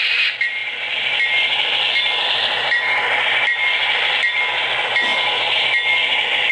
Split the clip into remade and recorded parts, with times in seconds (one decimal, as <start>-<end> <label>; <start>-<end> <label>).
0.0-5.1 remade; 5.1-6.5 recorded